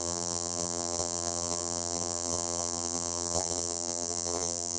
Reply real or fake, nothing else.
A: fake